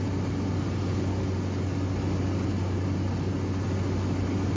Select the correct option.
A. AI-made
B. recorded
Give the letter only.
B